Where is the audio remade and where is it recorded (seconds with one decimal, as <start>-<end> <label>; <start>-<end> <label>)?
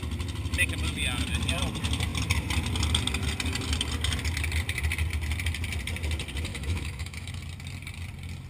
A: 0.0-6.5 recorded; 6.5-7.4 remade; 7.4-8.5 recorded